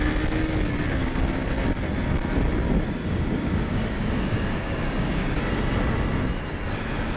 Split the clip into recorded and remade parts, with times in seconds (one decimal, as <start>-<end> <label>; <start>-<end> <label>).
0.0-1.0 recorded; 1.0-1.5 remade; 1.5-3.0 recorded; 3.0-5.4 remade; 5.4-7.2 recorded